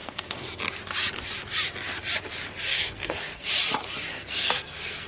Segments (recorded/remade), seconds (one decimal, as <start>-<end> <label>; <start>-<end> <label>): 0.0-0.6 remade; 0.6-2.7 recorded; 2.7-3.5 remade; 3.5-4.1 recorded; 4.1-5.1 remade